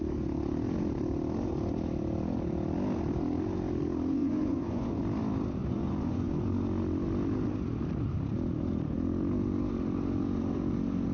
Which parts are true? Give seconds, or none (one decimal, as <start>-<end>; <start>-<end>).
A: 0.0-4.2; 5.0-5.6; 6.4-11.1